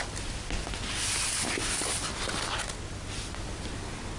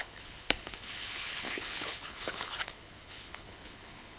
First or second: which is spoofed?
second